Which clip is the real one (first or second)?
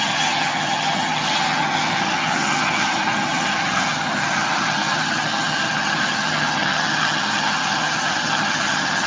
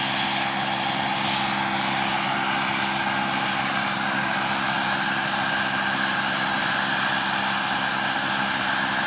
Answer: second